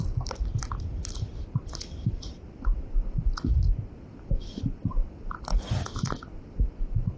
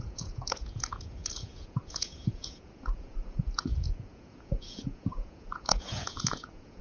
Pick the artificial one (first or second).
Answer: second